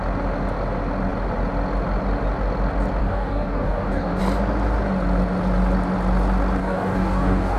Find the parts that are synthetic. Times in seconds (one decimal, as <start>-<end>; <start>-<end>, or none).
3.0-4.2; 6.6-7.6